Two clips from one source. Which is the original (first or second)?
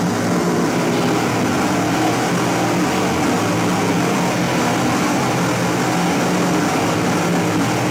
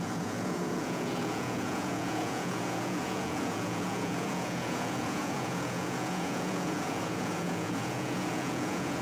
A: first